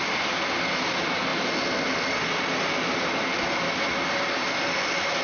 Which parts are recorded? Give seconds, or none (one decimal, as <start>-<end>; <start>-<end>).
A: 0.0-5.2